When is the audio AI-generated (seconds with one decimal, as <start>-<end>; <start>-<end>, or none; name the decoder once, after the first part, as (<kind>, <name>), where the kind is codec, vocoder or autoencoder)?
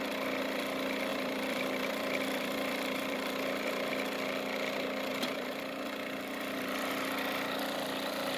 1.1-3.9 (vocoder, BigVGAN v2); 5.1-6.9